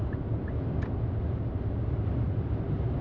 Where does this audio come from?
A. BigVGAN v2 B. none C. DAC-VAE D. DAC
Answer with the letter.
B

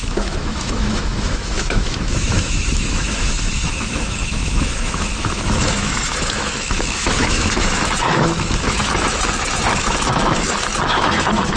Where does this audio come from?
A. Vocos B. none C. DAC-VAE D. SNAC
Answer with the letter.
C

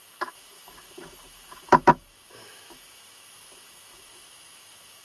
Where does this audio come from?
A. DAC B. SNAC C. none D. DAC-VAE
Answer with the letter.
D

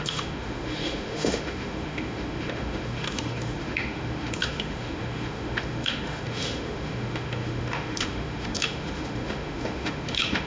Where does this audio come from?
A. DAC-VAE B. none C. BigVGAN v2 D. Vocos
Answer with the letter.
A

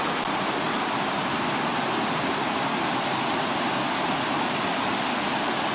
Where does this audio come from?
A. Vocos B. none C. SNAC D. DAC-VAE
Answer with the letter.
B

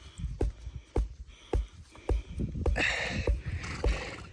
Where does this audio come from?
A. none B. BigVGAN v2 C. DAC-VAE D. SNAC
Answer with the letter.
A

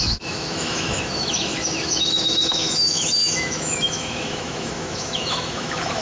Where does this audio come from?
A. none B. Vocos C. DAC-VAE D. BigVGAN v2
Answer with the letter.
C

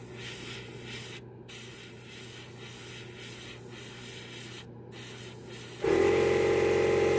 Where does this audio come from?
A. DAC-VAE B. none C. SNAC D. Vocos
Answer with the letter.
B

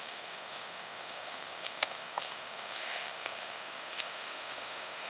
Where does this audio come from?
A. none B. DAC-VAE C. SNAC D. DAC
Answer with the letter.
B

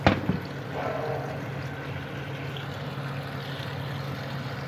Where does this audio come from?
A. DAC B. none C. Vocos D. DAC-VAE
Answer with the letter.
B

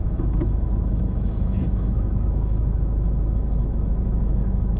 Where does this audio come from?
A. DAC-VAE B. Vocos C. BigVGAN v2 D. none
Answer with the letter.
A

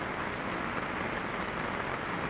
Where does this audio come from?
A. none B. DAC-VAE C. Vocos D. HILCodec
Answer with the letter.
A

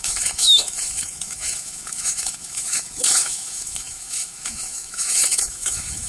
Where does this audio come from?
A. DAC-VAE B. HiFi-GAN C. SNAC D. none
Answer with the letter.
A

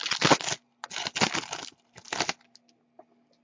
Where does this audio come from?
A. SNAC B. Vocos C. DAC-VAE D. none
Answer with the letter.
D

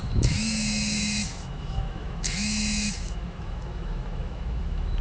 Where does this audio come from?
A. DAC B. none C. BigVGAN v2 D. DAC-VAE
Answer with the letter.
D